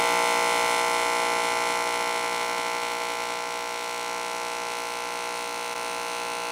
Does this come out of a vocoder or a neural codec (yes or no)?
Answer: no